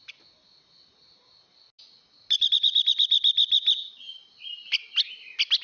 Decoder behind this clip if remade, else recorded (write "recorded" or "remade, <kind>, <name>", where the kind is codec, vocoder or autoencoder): recorded